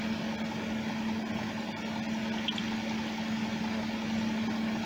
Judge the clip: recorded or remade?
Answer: recorded